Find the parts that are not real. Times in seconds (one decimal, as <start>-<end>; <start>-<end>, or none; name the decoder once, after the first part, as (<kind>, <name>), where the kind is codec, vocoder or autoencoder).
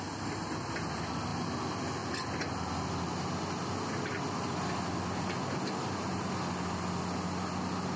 none